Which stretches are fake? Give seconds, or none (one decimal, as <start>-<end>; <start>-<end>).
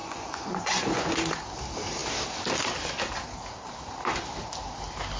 0.0-1.1